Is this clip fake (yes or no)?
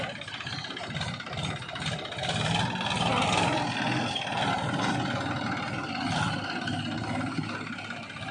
no